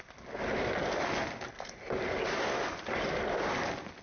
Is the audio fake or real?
real